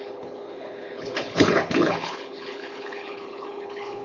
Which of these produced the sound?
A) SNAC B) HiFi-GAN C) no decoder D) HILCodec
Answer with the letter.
D